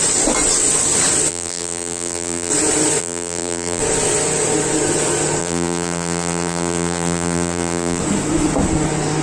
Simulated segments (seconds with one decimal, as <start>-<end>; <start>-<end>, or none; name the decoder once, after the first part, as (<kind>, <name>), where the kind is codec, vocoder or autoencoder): 1.3-2.5 (vocoder, BigVGAN v2); 3.0-3.8; 5.4-8.0